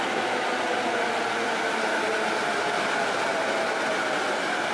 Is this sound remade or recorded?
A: recorded